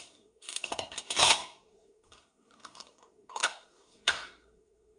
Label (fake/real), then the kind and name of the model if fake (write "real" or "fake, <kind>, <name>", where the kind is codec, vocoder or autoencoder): fake, codec, SNAC